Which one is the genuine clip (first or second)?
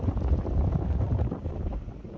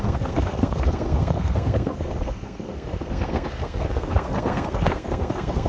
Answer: first